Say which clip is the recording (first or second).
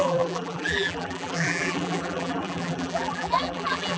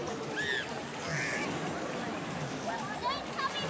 second